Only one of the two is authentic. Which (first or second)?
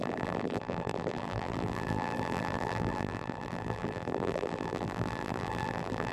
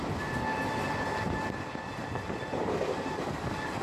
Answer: second